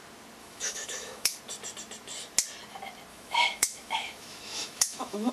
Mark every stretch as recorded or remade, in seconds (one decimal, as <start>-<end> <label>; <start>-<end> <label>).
0.0-0.4 recorded; 0.4-1.4 remade; 1.4-3.1 recorded; 3.1-5.3 remade